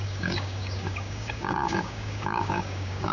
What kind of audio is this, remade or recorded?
remade